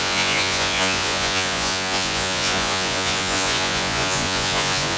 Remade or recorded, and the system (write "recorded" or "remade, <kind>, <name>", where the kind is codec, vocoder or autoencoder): remade, vocoder, Vocos